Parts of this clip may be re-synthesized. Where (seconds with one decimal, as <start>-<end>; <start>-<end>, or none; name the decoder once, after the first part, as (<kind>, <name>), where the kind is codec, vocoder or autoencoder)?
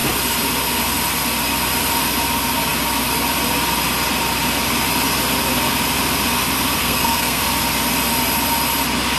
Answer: 6.8-7.4 (codec, SNAC)